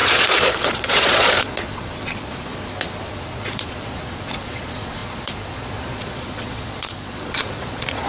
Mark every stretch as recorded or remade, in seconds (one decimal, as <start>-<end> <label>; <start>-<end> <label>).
0.0-2.5 remade; 2.5-3.1 recorded; 3.1-8.1 remade